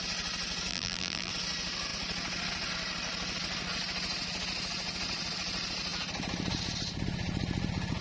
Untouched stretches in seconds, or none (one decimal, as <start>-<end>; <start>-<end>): 0.0-0.7; 1.3-8.0